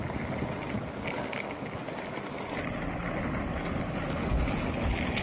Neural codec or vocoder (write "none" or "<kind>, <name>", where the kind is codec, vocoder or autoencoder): none